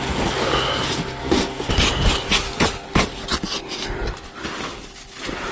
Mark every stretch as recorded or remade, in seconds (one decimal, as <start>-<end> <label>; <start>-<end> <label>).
0.0-1.2 recorded; 1.2-1.7 remade; 1.7-5.5 recorded